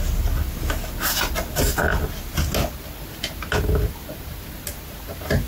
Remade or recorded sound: recorded